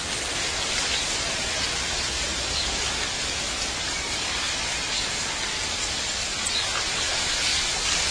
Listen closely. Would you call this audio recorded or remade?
recorded